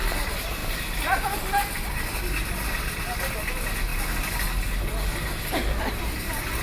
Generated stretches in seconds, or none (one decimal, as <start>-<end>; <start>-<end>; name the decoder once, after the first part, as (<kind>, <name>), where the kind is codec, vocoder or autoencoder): none